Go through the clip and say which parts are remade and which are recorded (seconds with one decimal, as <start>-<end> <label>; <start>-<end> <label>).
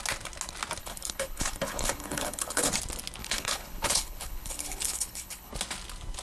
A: 0.0-0.8 recorded; 0.8-2.7 remade; 2.7-3.2 recorded; 3.2-5.5 remade; 5.5-6.2 recorded